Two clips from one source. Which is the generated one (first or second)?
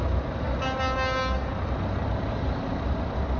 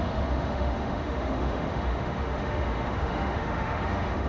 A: second